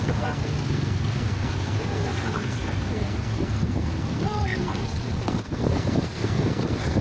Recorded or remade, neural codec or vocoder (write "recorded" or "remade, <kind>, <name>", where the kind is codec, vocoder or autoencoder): remade, codec, SNAC